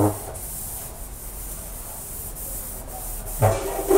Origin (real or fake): real